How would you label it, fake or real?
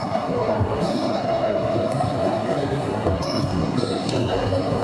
fake